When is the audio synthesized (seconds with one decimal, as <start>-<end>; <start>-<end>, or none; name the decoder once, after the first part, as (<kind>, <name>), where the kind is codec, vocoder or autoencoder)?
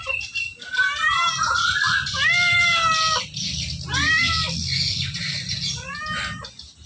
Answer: none